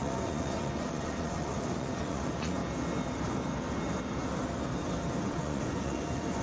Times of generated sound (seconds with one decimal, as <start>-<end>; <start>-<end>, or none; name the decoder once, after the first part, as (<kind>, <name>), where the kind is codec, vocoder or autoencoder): 0.0-2.6 (vocoder, Vocos); 5.2-6.4